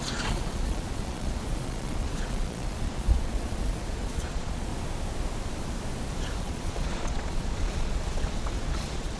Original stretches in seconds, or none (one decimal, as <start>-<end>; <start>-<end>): 4.7-6.4